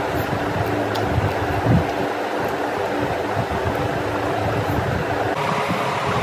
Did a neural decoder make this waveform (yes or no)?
no